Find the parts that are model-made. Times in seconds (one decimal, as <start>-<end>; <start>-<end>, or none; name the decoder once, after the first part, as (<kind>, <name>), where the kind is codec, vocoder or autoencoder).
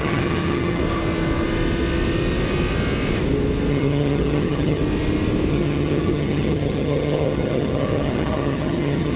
0.0-0.8 (vocoder, HiFi-GAN); 3.7-4.8; 5.5-9.2